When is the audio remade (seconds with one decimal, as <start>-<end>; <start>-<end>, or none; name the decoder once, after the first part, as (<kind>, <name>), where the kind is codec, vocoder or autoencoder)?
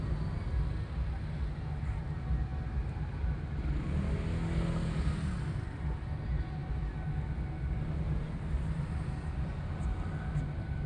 none